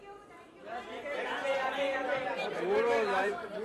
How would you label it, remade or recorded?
remade